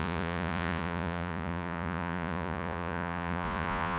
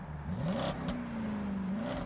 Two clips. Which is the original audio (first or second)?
second